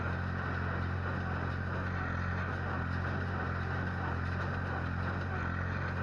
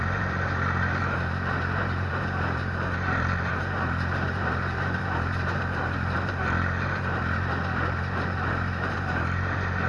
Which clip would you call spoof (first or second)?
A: second